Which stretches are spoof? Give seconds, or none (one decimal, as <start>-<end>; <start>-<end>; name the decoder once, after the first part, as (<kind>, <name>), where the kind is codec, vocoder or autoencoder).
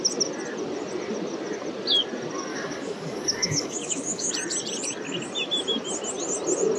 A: 2.5-4.3 (codec, DAC)